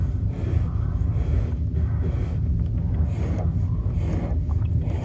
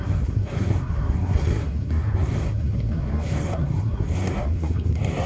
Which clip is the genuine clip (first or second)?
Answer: first